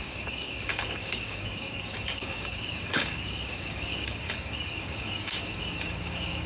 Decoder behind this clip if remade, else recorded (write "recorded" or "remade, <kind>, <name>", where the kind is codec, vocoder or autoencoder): remade, codec, DAC